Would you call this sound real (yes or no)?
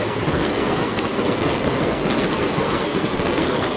no